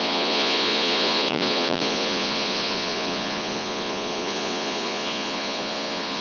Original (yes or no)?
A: no